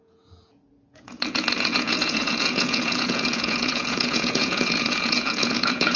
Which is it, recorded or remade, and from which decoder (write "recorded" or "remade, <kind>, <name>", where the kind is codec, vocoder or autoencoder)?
remade, vocoder, Vocos